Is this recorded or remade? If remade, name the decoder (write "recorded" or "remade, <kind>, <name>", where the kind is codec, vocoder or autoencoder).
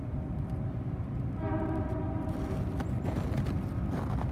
recorded